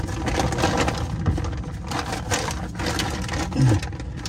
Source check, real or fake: real